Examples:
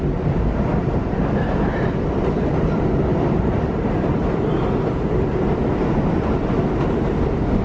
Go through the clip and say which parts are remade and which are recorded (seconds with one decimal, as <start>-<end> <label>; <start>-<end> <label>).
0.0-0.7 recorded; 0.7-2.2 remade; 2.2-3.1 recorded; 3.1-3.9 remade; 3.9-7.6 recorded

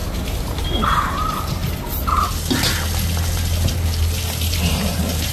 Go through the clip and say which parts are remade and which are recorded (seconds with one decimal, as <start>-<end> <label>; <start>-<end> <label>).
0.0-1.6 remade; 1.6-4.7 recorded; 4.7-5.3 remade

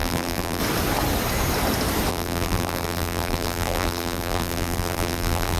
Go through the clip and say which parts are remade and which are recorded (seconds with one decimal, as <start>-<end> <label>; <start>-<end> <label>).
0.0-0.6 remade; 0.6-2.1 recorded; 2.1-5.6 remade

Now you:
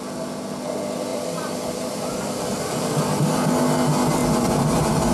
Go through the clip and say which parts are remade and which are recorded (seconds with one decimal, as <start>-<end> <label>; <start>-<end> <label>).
0.0-1.1 recorded; 1.1-3.1 remade; 3.1-4.2 recorded; 4.2-5.1 remade

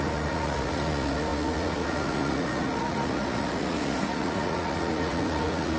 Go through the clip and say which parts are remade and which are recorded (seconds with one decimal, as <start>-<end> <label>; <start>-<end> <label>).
0.0-5.8 remade